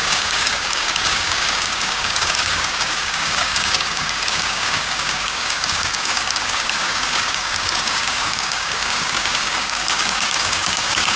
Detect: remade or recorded remade